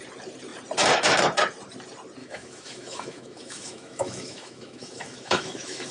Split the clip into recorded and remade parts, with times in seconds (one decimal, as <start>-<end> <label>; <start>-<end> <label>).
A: 0.0-2.2 recorded; 2.2-5.9 remade